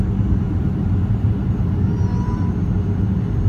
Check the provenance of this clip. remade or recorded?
recorded